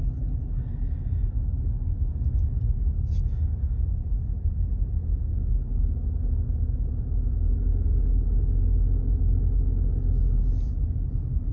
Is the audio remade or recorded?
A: recorded